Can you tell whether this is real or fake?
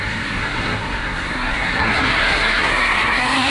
fake